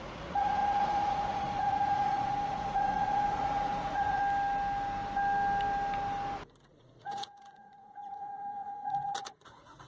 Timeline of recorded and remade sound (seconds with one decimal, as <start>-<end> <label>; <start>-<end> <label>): 0.0-4.2 remade; 4.2-6.7 recorded; 6.7-9.9 remade